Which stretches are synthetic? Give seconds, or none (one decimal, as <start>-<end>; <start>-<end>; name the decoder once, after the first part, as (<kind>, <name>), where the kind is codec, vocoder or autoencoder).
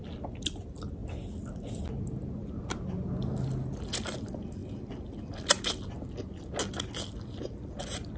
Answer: none